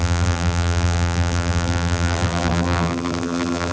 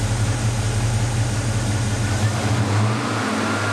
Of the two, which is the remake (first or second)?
first